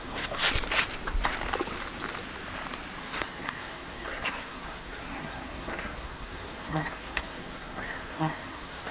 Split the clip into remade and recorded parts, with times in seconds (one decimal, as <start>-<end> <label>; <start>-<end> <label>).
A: 0.0-0.4 remade; 0.4-3.0 recorded; 3.0-8.9 remade

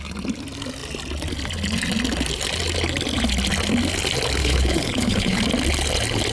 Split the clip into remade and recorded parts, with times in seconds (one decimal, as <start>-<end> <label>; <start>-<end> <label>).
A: 0.0-4.4 recorded; 4.4-5.4 remade; 5.4-6.3 recorded

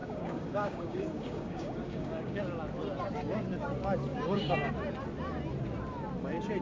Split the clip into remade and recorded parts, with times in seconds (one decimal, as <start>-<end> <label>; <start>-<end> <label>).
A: 0.0-2.4 remade; 2.4-4.1 recorded; 4.1-4.7 remade; 4.7-6.6 recorded

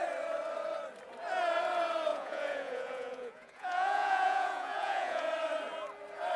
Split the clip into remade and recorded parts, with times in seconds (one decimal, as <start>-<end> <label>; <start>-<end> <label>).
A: 0.0-2.1 recorded; 2.1-5.3 remade; 5.3-6.4 recorded